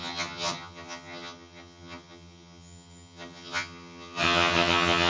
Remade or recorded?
remade